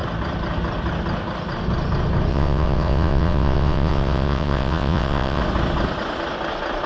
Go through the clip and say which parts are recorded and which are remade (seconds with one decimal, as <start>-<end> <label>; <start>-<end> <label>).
0.0-2.3 recorded; 2.3-5.4 remade; 5.4-6.9 recorded